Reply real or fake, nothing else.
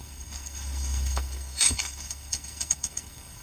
fake